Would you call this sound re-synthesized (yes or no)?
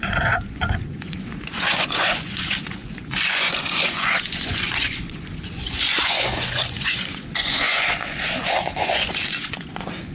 yes